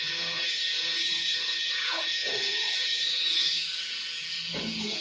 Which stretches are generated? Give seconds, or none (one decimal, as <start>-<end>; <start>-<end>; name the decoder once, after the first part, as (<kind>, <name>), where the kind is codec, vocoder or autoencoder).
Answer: 0.0-5.0 (codec, HILCodec)